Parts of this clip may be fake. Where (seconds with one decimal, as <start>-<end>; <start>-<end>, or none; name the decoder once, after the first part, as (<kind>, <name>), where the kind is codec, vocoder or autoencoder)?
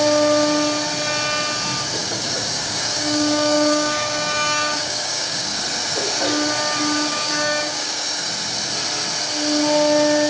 2.0-5.6 (codec, DAC); 7.1-8.3